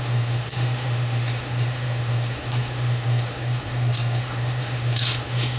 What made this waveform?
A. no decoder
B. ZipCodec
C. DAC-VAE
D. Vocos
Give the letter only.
C